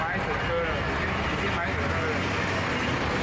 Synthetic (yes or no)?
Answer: no